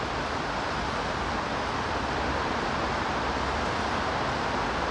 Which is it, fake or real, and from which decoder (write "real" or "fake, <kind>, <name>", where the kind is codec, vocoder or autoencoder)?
real